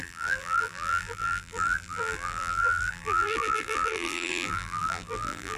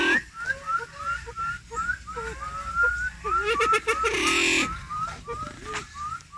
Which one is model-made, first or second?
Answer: first